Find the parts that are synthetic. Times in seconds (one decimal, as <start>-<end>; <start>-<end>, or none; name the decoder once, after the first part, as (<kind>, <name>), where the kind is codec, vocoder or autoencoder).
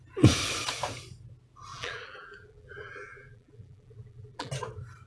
1.7-4.5 (vocoder, BigVGAN v2)